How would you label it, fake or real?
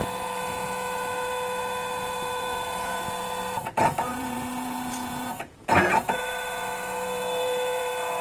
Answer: fake